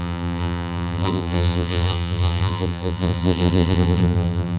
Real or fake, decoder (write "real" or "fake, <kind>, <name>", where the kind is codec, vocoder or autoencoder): fake, vocoder, BigVGAN v2